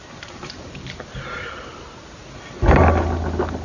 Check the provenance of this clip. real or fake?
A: real